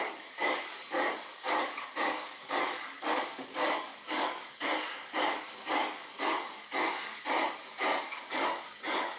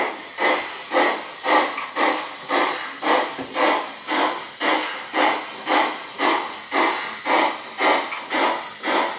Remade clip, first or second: first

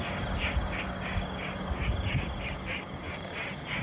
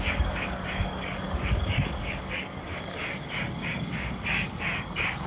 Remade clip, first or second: second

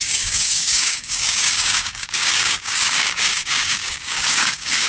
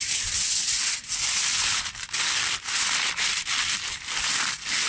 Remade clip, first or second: first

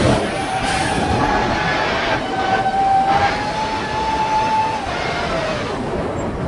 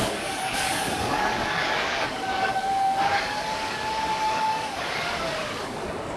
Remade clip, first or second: second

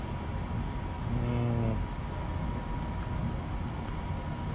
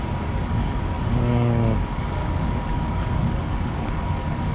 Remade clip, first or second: second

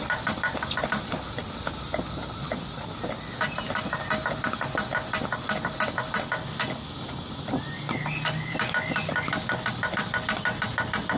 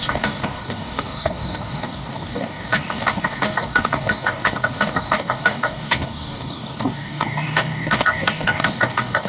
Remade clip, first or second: second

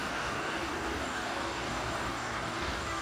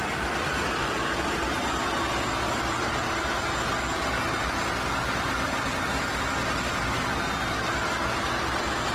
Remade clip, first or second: first